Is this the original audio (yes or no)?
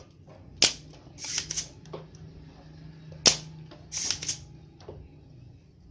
yes